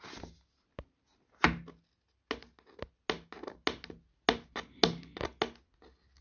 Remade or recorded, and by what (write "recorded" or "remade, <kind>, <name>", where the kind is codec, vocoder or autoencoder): recorded